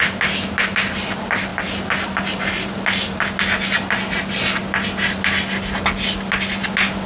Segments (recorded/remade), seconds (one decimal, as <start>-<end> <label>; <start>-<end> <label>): 0.0-7.1 recorded